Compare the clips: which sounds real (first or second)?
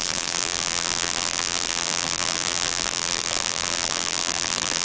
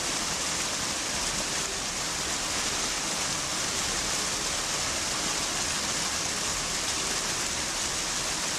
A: second